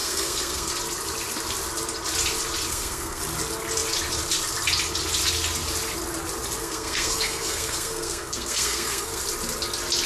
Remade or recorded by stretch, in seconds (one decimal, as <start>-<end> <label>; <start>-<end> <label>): 0.0-0.7 remade; 0.7-2.7 recorded; 2.7-3.2 remade; 3.2-6.6 recorded; 6.6-9.2 remade; 9.2-10.1 recorded